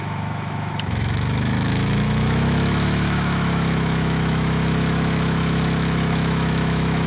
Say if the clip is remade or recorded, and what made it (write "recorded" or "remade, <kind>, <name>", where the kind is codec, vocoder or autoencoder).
remade, autoencoder, DAC-VAE